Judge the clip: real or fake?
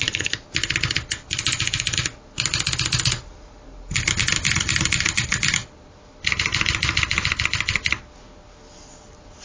real